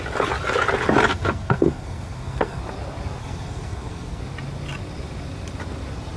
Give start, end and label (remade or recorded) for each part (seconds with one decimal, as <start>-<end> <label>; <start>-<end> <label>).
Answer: 0.0-1.1 recorded; 1.1-2.6 remade; 2.6-3.2 recorded; 3.2-4.2 remade; 4.2-6.2 recorded